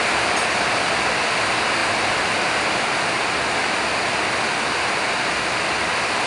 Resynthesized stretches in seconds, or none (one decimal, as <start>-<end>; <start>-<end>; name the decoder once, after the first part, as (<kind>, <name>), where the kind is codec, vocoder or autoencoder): none